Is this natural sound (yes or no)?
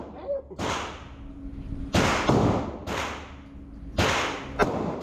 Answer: yes